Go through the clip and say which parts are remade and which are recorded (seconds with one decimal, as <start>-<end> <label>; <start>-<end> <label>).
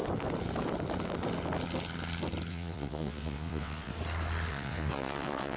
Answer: 0.0-2.5 recorded; 2.5-3.9 remade; 3.9-4.5 recorded; 4.5-5.6 remade